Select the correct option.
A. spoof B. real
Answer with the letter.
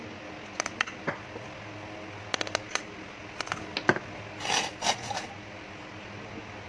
B